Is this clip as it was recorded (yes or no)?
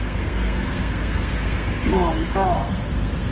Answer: no